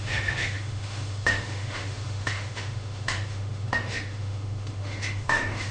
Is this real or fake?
fake